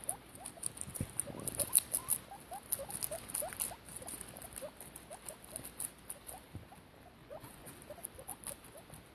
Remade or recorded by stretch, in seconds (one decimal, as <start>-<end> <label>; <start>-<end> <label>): 0.0-7.2 recorded; 7.2-7.7 remade; 7.7-9.1 recorded